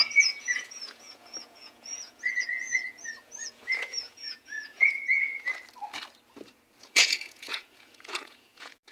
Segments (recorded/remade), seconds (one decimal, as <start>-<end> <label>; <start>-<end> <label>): 0.0-5.5 remade; 5.5-6.8 recorded; 6.8-8.9 remade